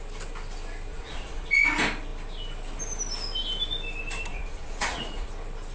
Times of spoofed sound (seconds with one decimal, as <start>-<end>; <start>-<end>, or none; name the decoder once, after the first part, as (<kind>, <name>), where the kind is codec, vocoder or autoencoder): 0.9-1.6 (vocoder, Vocos); 4.3-5.3